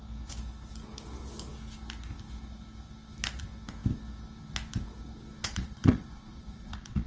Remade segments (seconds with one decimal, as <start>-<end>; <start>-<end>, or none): 5.4-7.1